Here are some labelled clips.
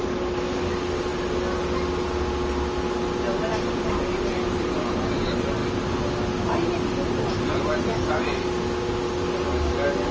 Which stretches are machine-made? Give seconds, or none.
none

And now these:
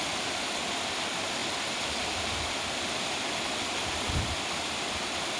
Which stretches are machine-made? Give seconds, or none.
none

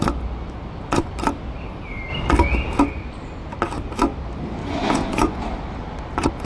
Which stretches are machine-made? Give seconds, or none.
4.6-5.4 (vocoder, Vocos)

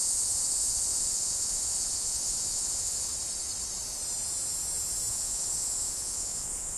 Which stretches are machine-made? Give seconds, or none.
0.0-3.1 (vocoder, Vocos); 5.1-6.8

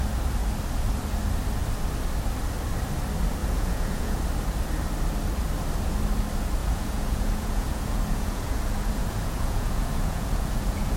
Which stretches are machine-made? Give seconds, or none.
3.4-4.2 (vocoder, Vocos); 6.6-11.0

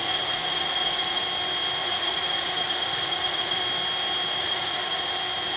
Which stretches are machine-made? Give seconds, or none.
0.0-1.2 (vocoder, Vocos); 1.8-3.6; 4.4-5.0